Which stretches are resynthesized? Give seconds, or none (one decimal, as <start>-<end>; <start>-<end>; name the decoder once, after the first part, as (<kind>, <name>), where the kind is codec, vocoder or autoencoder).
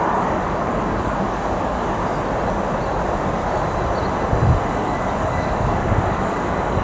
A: 0.0-2.0 (codec, DAC); 4.7-6.8